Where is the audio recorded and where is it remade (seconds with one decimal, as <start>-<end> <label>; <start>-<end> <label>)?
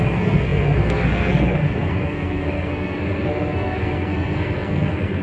0.0-5.2 remade